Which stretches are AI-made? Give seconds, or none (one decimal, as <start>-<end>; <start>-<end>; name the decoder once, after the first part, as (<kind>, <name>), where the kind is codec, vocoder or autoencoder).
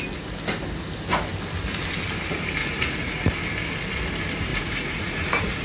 2.6-3.3 (vocoder, Vocos); 4.5-5.6